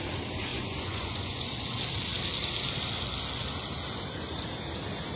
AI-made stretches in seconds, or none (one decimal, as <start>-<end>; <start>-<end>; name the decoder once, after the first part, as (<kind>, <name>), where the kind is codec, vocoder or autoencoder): 0.5-1.5 (vocoder, Vocos)